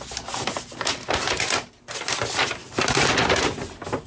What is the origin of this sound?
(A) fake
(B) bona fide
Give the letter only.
B